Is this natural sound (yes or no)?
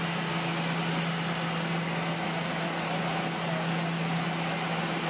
yes